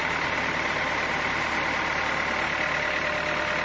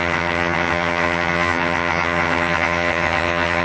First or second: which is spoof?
second